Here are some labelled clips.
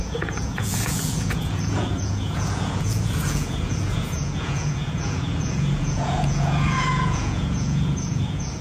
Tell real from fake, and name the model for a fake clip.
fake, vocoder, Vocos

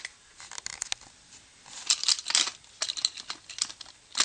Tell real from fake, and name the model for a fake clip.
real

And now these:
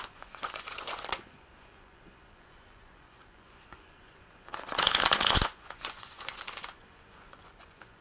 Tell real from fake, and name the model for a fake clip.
fake, vocoder, Vocos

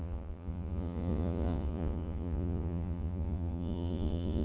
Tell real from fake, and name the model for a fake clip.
fake, vocoder, Vocos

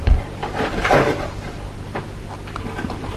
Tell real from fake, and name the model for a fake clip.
real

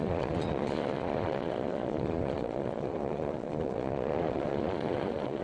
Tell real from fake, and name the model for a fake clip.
fake, vocoder, Vocos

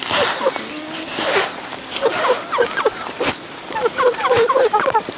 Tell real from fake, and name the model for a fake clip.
real